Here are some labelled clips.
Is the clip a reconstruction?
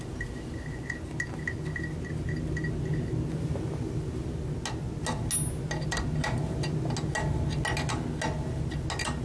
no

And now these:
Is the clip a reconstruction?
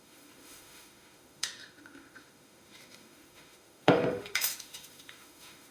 yes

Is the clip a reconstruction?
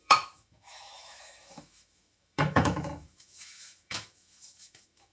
yes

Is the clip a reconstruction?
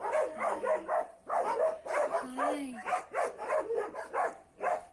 no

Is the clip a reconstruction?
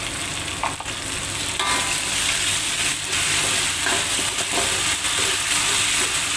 no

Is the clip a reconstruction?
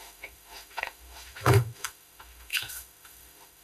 yes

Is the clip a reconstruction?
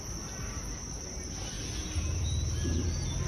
no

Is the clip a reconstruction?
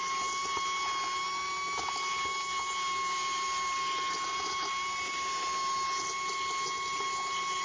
no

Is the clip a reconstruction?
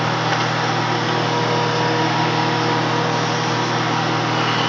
no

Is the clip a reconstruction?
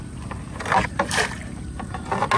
no